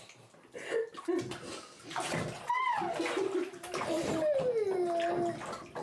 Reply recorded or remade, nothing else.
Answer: recorded